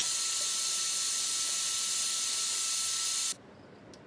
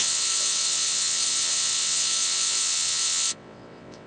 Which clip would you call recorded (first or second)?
first